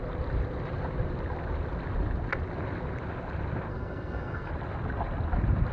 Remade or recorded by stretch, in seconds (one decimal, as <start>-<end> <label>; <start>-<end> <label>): 0.0-3.7 recorded; 3.7-4.5 remade; 4.5-5.7 recorded